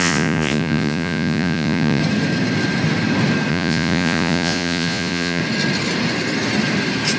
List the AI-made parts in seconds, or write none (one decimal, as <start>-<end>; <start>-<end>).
0.0-2.0; 3.5-5.4